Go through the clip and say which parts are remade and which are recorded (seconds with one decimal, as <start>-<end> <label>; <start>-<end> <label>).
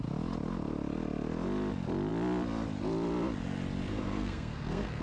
0.0-3.9 recorded; 3.9-5.0 remade